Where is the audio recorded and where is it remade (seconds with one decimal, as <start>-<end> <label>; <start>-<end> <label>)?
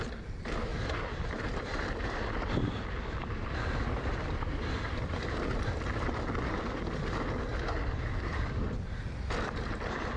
0.0-0.7 recorded; 0.7-5.4 remade; 5.4-7.5 recorded; 7.5-10.2 remade